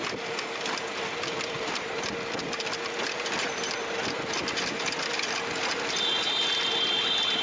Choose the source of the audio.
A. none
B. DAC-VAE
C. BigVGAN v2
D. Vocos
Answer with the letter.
C